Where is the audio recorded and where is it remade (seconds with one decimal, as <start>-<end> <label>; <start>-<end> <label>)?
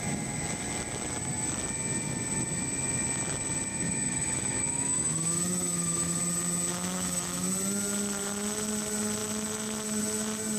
0.0-3.7 recorded; 3.7-6.2 remade; 6.2-6.7 recorded; 6.7-7.5 remade; 7.5-10.6 recorded